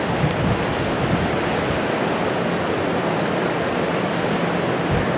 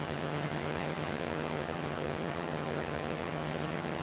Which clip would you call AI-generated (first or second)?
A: second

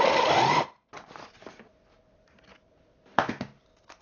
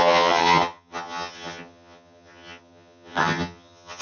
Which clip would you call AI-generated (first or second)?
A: second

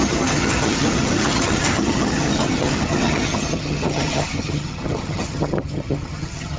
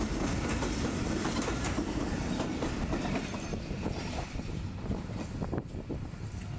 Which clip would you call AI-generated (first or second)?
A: first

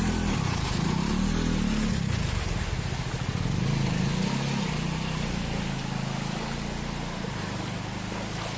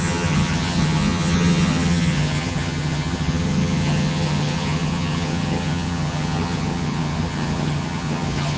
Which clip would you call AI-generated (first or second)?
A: second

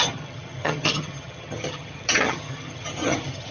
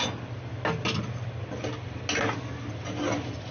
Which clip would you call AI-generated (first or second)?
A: first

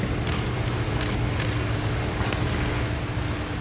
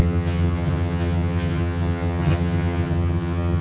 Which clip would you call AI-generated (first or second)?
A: second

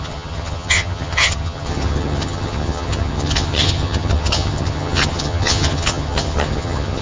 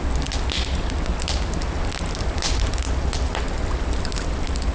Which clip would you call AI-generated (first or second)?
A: first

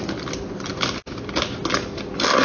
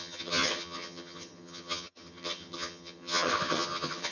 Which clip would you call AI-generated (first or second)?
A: second